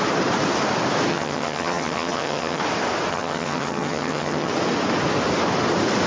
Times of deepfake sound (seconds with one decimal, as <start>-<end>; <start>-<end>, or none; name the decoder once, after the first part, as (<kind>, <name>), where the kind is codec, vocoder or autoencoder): 1.1-2.6 (vocoder, HiFi-GAN); 3.1-4.5